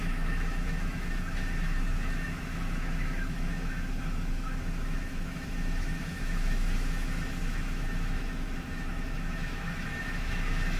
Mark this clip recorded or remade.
remade